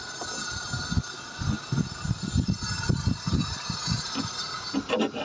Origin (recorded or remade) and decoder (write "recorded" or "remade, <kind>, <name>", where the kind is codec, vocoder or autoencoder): recorded